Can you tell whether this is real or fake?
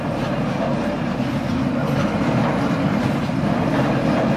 real